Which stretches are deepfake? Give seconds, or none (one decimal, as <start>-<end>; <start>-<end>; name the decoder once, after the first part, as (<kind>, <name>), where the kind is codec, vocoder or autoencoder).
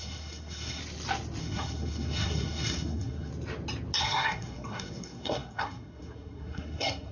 0.0-0.8 (codec, SNAC); 1.4-3.3; 4.0-7.1